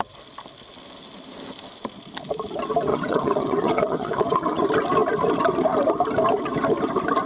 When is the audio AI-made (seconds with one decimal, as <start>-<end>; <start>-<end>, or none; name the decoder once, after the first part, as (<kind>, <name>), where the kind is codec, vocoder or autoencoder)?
2.9-4.6 (vocoder, WaveNeXt)